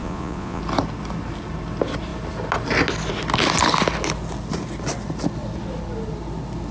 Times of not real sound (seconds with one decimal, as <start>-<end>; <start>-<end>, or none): 0.0-0.6